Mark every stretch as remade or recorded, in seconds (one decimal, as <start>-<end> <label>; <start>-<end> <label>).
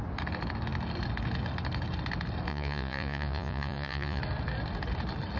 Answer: 0.0-2.5 recorded; 2.5-4.2 remade; 4.2-5.4 recorded